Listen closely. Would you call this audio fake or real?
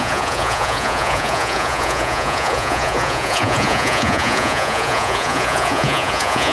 fake